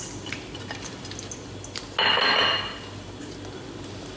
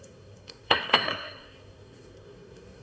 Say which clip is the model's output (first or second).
second